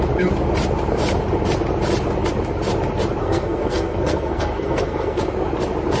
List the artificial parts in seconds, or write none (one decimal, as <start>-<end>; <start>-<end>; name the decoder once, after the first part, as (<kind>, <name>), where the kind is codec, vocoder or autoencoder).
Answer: 3.2-5.2 (codec, SNAC)